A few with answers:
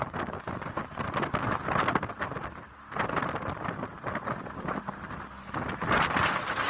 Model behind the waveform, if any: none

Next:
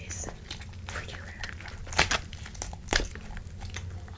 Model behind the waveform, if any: none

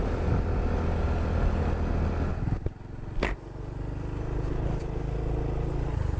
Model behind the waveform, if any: none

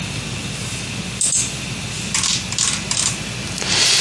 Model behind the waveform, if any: none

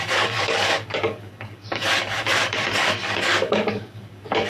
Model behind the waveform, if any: codec, DAC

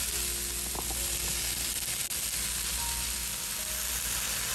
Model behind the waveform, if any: none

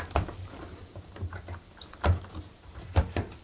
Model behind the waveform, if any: none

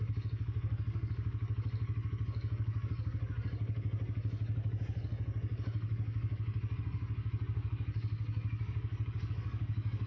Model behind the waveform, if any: codec, DAC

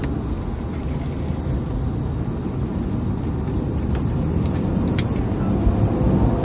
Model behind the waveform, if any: none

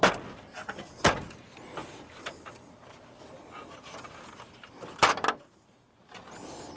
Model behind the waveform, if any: none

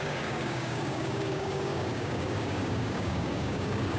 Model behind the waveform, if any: codec, DAC